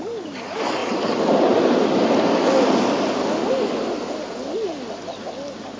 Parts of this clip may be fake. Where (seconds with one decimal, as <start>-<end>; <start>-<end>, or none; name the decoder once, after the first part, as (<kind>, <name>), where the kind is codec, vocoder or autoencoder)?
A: none